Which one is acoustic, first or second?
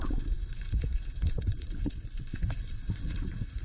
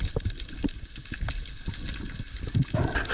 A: second